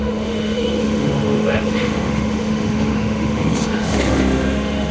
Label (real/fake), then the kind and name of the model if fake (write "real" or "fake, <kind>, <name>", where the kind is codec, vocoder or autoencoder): fake, autoencoder, DAC-VAE